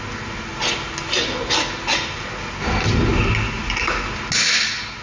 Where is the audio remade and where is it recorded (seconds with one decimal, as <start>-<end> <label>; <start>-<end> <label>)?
0.0-5.0 recorded